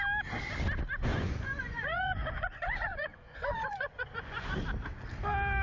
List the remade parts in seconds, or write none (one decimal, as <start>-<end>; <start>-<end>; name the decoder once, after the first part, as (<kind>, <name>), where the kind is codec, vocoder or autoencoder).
1.1-4.5 (vocoder, Vocos)